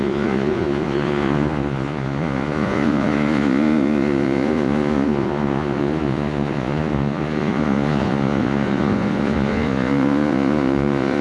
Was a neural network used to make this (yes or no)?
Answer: yes